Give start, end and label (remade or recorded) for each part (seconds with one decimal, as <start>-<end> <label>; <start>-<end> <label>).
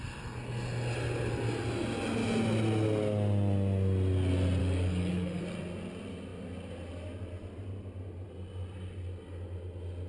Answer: 0.0-4.6 recorded; 4.6-5.4 remade; 5.4-10.1 recorded